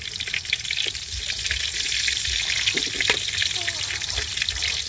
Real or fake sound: real